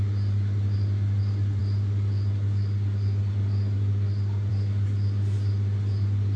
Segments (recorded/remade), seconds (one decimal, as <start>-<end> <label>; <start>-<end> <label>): 0.0-6.4 recorded